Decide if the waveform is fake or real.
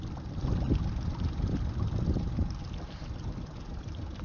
real